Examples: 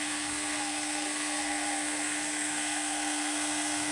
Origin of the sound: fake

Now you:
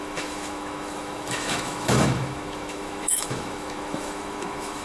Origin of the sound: fake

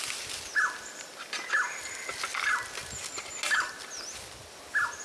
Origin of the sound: real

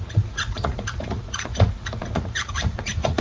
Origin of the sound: fake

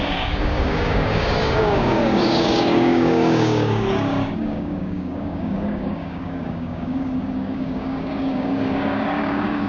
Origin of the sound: fake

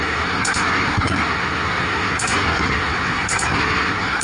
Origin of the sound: fake